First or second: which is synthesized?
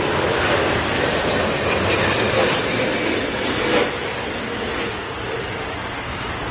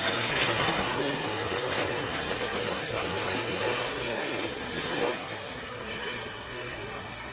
second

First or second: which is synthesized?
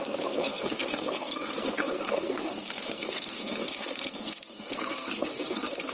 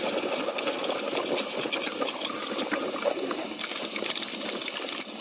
first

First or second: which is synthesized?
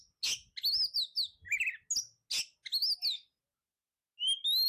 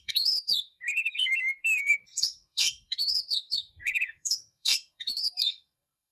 second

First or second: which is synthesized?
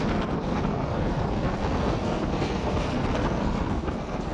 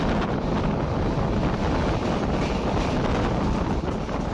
first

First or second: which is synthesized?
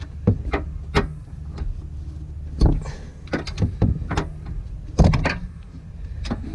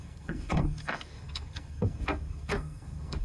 second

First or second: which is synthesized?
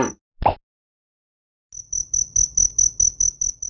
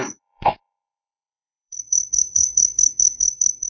second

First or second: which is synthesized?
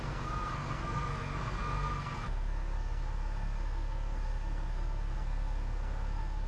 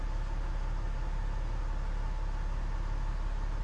first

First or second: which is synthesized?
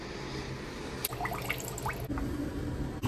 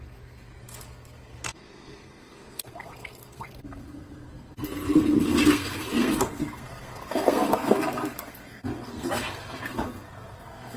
second